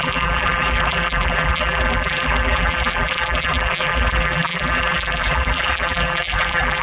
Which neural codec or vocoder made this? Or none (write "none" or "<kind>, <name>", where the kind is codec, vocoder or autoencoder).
vocoder, BigVGAN v2